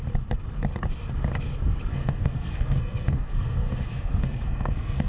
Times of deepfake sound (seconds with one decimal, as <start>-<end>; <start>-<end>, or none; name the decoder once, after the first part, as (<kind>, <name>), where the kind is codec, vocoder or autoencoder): 1.9-5.1 (codec, SNAC)